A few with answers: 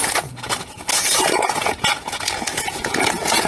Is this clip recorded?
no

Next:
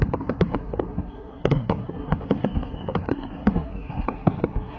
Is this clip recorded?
no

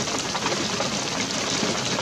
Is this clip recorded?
yes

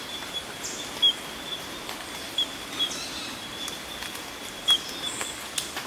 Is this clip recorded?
yes